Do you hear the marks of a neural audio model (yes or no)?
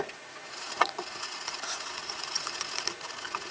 yes